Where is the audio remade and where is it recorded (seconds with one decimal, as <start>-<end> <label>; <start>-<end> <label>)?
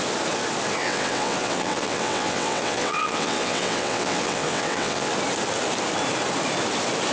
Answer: 0.0-0.8 recorded; 0.8-5.1 remade; 5.1-7.1 recorded